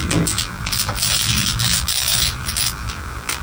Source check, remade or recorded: remade